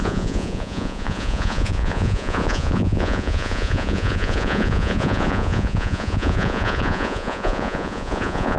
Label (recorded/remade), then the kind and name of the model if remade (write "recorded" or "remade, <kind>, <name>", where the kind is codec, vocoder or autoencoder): remade, vocoder, Vocos